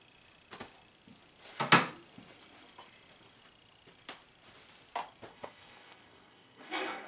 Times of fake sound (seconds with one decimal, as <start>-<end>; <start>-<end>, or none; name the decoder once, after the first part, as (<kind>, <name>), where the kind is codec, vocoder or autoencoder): 5.3-7.1 (codec, SNAC)

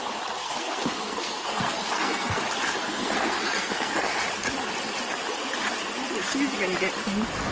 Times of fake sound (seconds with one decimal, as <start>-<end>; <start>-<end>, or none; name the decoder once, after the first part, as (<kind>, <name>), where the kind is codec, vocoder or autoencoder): 0.4-2.4 (codec, SNAC); 2.8-4.2

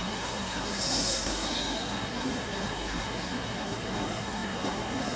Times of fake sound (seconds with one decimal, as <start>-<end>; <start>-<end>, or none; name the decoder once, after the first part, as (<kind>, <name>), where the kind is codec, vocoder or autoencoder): 0.0-5.2 (codec, SNAC)

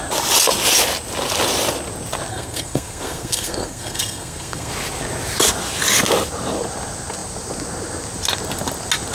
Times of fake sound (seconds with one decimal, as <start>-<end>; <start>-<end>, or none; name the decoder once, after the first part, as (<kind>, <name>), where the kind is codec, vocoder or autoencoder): 2.3-4.7 (codec, SNAC)